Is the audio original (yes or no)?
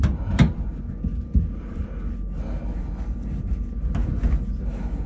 yes